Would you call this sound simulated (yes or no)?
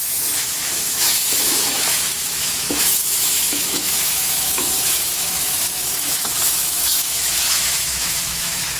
yes